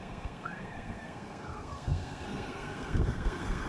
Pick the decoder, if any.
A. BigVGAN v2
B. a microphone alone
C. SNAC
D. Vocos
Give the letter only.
C